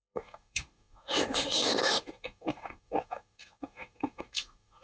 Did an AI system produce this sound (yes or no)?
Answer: yes